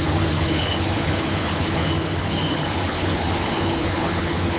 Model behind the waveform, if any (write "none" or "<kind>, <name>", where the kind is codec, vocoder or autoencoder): codec, HILCodec